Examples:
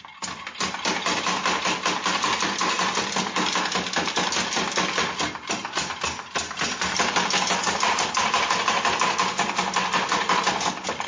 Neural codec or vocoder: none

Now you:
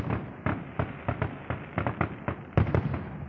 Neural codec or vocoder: none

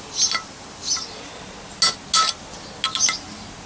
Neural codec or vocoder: none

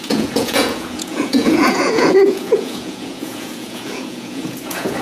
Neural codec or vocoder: vocoder, Vocos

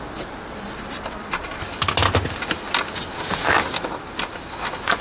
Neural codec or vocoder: none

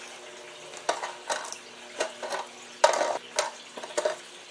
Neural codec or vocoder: none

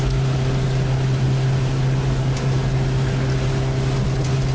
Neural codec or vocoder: none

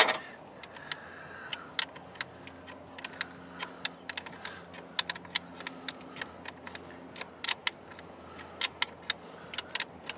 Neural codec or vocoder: none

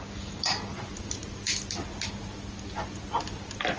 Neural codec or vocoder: none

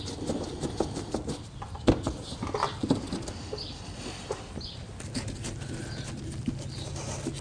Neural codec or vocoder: none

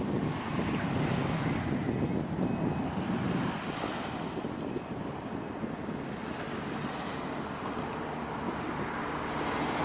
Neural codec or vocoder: none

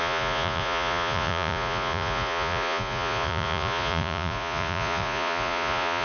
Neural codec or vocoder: vocoder, Vocos